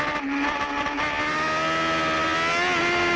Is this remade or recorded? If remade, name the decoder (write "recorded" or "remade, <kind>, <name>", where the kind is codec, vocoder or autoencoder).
recorded